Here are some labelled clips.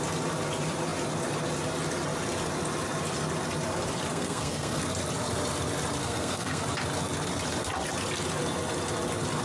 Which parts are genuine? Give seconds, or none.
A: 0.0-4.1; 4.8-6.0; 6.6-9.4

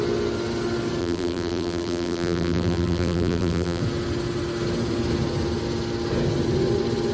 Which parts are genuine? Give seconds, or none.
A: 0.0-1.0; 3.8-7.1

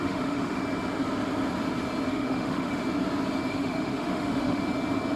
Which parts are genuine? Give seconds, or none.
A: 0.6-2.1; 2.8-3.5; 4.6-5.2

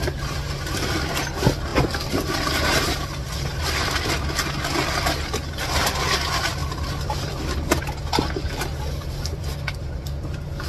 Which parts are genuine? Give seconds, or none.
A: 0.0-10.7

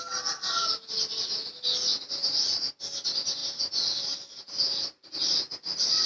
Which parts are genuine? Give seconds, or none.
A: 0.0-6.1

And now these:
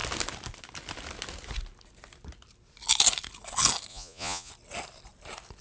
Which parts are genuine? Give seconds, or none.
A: 0.0-3.9; 4.5-5.6

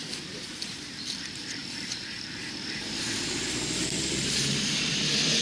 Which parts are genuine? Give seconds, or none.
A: none

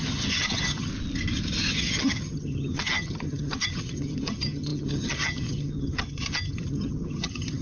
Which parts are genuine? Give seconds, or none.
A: 0.9-1.7